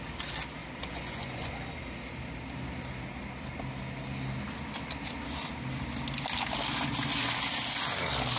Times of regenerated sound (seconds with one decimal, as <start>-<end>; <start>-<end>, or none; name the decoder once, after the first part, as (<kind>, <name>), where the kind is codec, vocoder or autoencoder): 0.6-1.5 (vocoder, Vocos)